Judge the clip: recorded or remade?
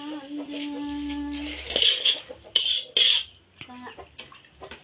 recorded